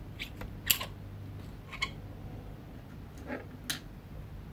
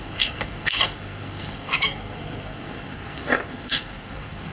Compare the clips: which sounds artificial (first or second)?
second